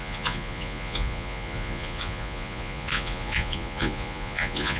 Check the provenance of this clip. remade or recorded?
remade